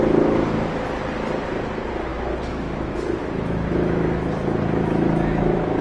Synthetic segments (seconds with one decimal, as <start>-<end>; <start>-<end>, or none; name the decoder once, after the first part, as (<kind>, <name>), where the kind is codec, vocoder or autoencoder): 2.1-5.8 (autoencoder, DAC-VAE)